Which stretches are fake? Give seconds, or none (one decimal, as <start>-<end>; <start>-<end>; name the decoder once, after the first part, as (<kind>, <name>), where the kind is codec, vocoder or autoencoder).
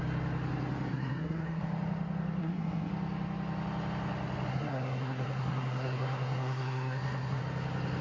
0.9-1.6 (codec, SNAC); 2.4-2.9; 4.5-7.4